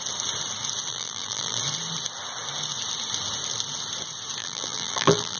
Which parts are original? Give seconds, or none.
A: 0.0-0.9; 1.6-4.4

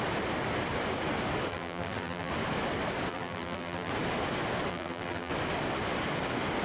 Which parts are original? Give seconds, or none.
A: 0.0-1.5; 2.3-3.1; 3.9-4.7; 5.3-6.6